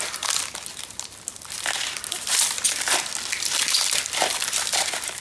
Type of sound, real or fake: real